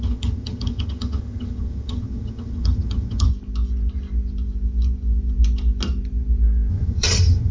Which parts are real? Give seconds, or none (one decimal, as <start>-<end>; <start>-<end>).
3.3-6.7